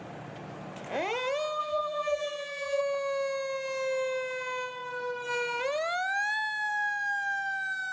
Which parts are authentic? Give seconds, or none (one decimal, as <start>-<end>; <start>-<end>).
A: 0.0-1.6; 2.8-7.9